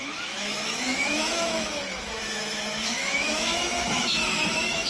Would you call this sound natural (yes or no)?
no